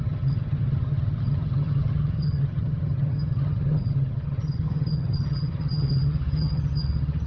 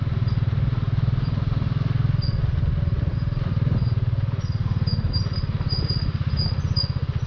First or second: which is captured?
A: second